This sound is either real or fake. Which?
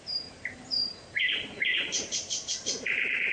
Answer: fake